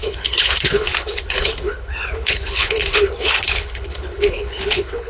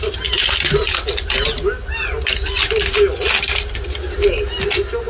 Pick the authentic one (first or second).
second